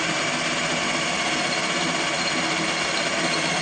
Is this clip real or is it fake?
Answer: real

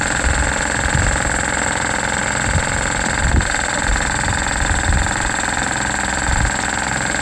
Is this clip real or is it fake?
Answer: real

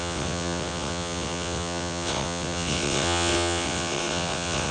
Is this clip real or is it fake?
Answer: fake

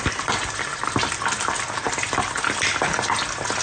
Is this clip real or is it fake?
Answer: real